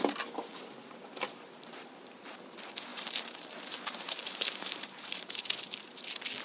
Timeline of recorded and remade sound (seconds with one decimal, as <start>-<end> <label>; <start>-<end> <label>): 0.0-0.8 recorded; 0.8-2.4 remade; 2.4-2.9 recorded; 2.9-5.4 remade; 5.4-6.4 recorded